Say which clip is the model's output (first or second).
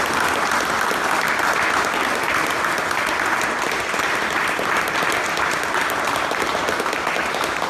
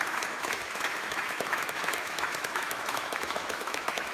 second